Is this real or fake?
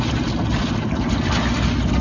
real